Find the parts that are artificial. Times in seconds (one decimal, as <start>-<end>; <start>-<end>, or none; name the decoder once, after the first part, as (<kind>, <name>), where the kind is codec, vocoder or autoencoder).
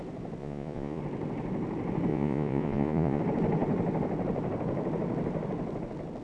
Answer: 0.4-1.0 (vocoder, Vocos); 2.1-3.2